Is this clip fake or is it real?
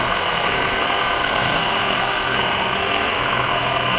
fake